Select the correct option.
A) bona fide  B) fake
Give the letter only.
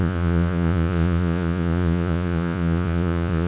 B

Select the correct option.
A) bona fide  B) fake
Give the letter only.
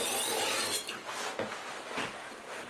A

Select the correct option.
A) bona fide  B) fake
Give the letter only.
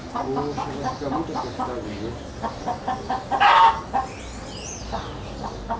A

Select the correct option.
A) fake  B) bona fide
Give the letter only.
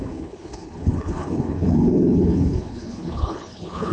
A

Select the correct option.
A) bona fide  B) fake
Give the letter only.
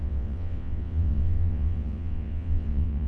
B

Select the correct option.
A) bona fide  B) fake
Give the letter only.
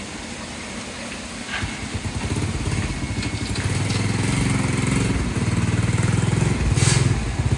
A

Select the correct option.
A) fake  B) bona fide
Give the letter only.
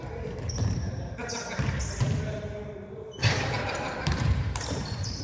A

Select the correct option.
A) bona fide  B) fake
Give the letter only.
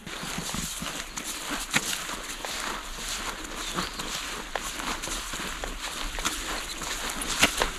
A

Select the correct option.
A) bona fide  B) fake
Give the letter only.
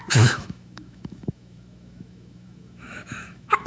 B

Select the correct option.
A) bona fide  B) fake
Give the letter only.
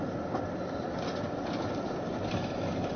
A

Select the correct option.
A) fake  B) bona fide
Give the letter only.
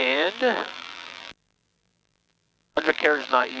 A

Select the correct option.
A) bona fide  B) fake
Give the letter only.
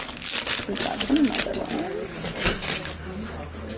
A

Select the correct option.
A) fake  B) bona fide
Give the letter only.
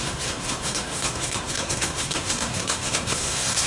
A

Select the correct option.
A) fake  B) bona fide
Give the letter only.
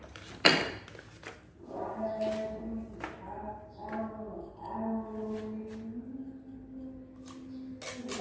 B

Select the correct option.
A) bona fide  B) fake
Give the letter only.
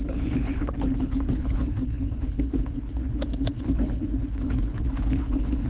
B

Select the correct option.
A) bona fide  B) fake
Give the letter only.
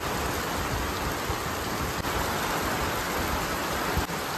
A